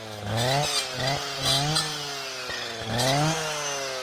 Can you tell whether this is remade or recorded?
recorded